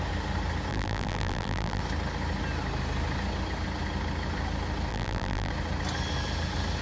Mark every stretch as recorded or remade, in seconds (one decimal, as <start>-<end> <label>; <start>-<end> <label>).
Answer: 0.0-0.7 recorded; 0.7-1.8 remade; 1.8-4.9 recorded; 4.9-5.5 remade; 5.5-6.8 recorded